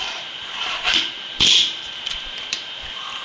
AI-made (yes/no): yes